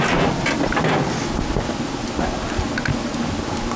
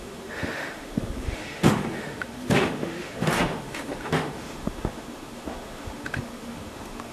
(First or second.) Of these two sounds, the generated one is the second